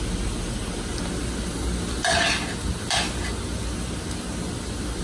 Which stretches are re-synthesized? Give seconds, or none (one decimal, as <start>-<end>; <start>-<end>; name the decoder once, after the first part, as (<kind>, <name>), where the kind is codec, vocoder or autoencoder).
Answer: none